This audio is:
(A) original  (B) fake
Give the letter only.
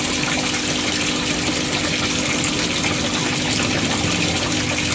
A